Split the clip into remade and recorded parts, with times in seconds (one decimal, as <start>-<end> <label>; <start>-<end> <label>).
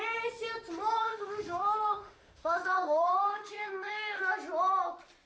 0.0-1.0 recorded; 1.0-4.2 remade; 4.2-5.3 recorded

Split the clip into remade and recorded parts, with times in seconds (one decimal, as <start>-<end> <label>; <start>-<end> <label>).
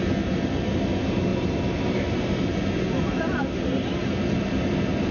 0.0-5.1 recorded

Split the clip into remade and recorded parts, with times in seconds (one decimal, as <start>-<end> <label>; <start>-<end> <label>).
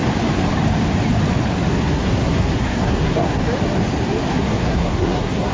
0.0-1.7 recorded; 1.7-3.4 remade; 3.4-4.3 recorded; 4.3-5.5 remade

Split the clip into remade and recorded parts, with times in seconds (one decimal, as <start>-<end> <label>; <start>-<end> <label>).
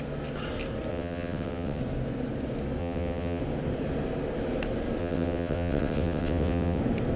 0.0-0.9 recorded; 0.9-1.8 remade; 1.8-2.8 recorded; 2.8-3.4 remade; 3.4-5.0 recorded; 5.0-6.8 remade; 6.8-7.2 recorded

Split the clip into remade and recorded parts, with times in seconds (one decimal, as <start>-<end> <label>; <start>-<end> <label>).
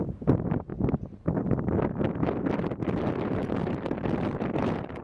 0.0-5.0 recorded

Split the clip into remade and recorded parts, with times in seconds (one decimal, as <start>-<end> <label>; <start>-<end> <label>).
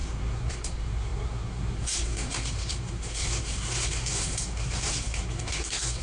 0.0-6.0 remade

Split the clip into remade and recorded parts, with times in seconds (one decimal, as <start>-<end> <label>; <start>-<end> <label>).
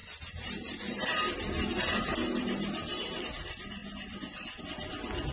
0.0-3.2 remade; 3.2-5.3 recorded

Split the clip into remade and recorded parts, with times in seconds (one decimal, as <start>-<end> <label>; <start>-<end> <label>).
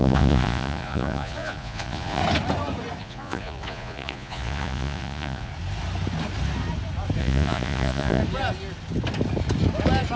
0.0-2.2 remade; 2.2-3.0 recorded; 3.0-5.5 remade; 5.5-7.2 recorded; 7.2-8.2 remade; 8.2-10.2 recorded